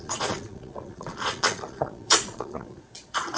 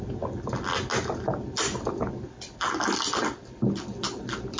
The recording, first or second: second